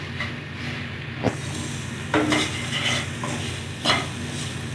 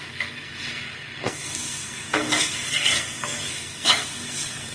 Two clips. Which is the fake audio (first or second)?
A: second